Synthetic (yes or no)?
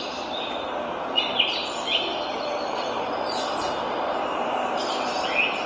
yes